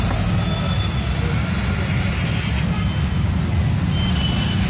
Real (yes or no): yes